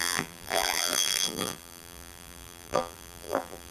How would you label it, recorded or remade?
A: remade